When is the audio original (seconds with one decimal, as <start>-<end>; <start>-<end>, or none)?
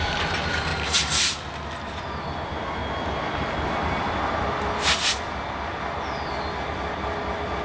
0.0-7.6